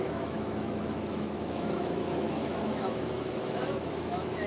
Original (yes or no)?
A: no